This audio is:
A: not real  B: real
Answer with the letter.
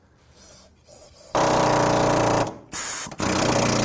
B